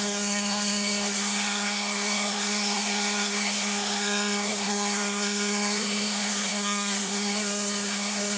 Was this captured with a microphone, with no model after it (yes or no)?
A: no